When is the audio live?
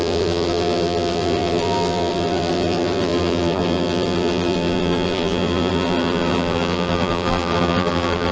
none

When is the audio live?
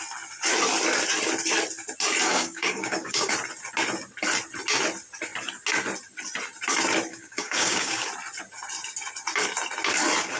0.0-2.3; 3.3-7.1; 8.1-10.4